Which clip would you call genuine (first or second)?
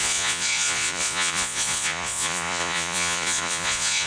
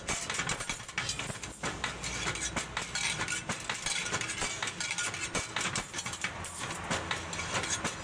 second